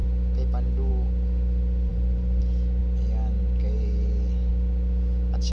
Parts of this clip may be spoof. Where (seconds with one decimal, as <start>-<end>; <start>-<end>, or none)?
1.9-2.4